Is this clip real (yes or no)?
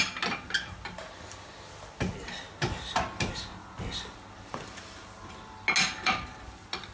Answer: yes